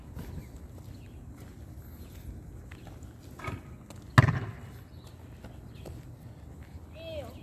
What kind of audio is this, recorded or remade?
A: recorded